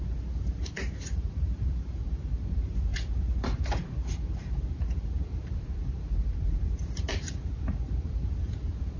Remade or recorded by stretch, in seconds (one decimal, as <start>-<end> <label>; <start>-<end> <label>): 0.0-9.0 remade